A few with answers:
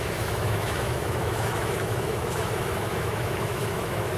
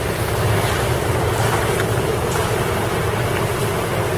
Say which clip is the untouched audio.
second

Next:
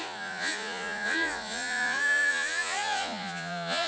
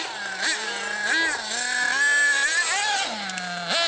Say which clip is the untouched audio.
second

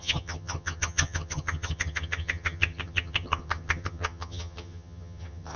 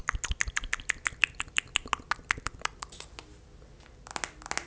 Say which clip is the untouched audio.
second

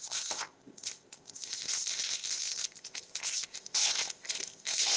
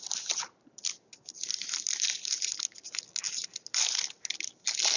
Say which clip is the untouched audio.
second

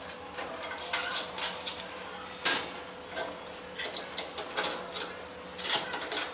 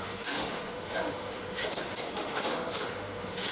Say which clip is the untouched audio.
first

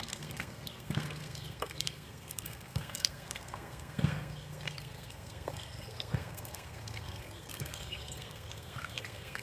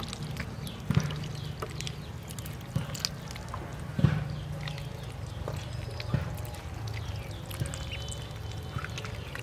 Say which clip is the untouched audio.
second